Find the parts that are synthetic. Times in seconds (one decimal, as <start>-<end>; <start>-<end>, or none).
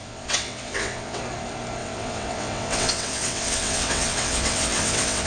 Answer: 0.0-1.2; 1.8-5.3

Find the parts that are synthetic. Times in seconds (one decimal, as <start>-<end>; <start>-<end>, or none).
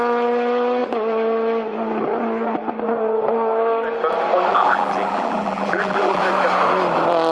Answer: 4.5-6.2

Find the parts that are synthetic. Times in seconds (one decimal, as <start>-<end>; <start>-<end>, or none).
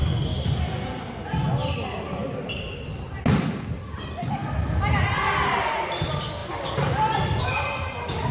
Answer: none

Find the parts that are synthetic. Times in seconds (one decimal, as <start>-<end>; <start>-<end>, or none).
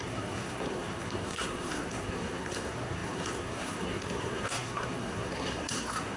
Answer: 0.0-6.2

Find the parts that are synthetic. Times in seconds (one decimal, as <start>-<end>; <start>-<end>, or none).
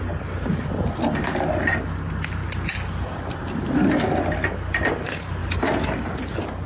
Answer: none